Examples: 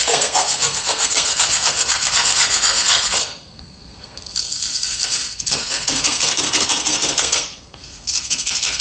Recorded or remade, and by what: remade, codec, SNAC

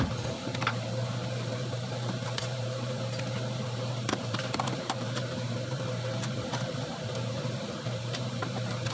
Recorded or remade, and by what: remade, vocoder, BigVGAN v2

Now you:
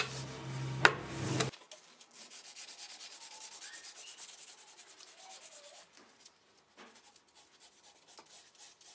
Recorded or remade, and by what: recorded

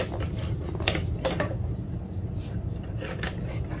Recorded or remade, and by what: recorded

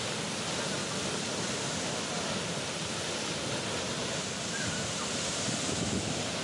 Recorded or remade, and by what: recorded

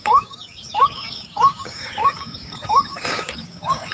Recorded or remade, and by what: remade, codec, DAC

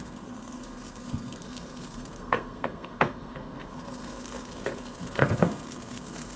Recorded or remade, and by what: remade, codec, SNAC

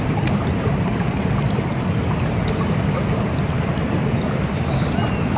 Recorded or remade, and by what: recorded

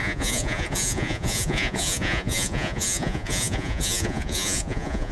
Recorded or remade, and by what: remade, vocoder, Vocos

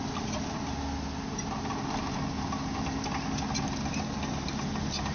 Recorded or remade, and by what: recorded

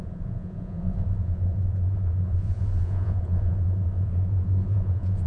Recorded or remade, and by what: remade, vocoder, Vocos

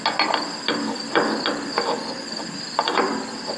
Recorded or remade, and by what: recorded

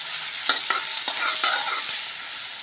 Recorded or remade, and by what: recorded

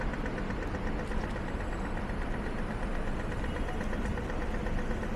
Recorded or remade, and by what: recorded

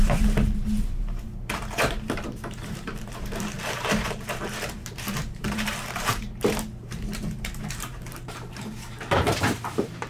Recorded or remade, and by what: remade, vocoder, BigVGAN v2